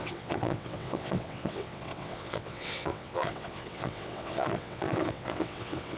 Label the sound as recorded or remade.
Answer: remade